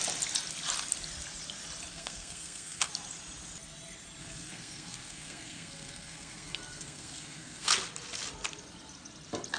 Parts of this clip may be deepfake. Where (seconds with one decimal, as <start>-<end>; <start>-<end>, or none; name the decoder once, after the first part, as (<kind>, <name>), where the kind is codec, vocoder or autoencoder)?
1.9-2.9 (codec, SNAC); 4.2-7.7